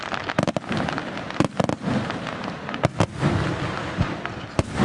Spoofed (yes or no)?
no